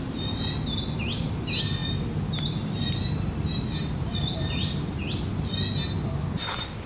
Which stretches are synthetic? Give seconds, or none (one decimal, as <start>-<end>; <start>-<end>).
1.8-5.4